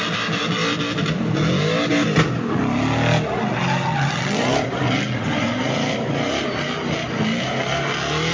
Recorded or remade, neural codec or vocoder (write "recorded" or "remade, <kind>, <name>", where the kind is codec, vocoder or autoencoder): recorded